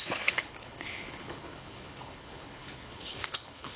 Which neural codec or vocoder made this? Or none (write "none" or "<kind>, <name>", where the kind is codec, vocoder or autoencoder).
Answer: codec, HILCodec